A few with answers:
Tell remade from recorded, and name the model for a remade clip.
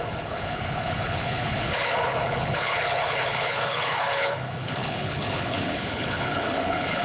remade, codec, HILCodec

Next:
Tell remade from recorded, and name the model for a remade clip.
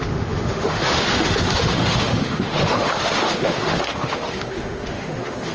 remade, autoencoder, DAC-VAE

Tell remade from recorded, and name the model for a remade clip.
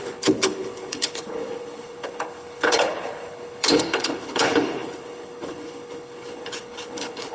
remade, codec, HILCodec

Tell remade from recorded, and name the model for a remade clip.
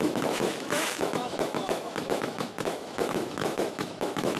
remade, autoencoder, DAC-VAE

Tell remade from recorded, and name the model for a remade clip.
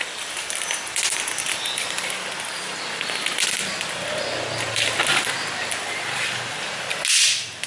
recorded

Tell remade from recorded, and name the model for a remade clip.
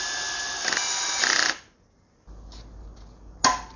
recorded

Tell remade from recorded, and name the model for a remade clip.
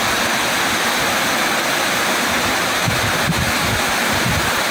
recorded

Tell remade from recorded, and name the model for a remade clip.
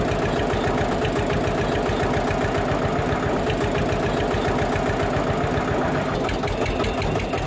recorded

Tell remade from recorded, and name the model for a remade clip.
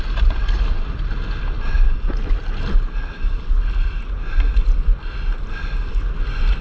recorded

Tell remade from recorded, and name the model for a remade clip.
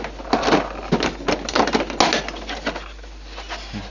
recorded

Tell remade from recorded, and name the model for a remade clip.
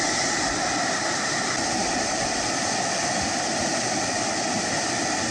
recorded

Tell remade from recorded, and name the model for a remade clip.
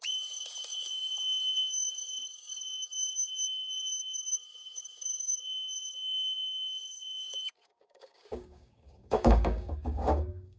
remade, codec, DAC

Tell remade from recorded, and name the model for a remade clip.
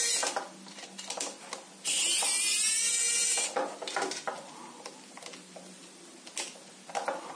recorded